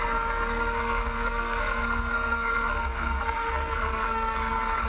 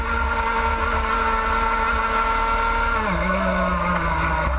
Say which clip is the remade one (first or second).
first